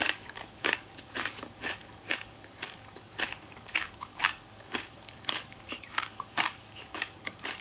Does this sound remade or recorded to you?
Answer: remade